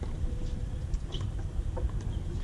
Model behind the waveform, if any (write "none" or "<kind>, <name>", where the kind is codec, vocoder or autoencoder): none